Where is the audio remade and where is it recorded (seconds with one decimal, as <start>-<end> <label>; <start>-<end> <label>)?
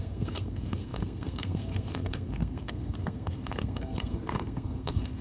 0.0-5.2 remade